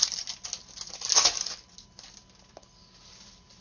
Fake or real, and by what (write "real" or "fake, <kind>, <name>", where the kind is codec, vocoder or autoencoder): real